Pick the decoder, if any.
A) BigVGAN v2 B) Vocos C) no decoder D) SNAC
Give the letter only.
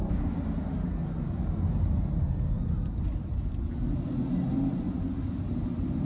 C